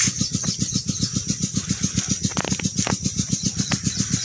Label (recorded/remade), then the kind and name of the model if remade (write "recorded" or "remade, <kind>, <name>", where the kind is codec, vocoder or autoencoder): recorded